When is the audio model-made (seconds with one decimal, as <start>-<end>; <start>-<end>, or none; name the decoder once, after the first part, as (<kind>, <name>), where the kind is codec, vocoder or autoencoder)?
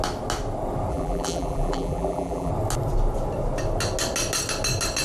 0.9-2.5 (vocoder, BigVGAN v2)